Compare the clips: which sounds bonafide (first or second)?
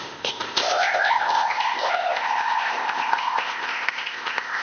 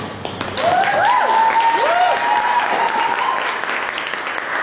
second